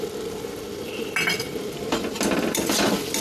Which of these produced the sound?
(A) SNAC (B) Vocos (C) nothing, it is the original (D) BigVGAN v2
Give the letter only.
D